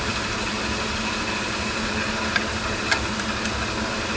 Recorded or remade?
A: recorded